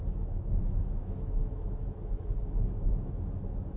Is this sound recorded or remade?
remade